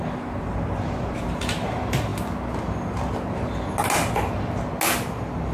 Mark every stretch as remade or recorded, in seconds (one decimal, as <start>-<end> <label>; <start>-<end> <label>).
0.0-2.1 remade; 2.1-5.5 recorded